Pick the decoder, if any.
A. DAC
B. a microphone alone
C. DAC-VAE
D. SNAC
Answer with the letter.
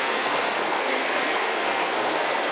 D